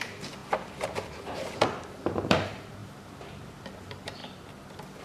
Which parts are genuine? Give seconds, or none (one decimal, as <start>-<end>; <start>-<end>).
2.8-3.7; 4.2-5.0

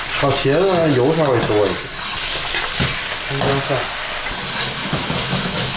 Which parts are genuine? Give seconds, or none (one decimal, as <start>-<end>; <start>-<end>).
0.0-4.8